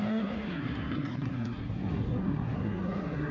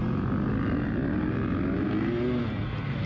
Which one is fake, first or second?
first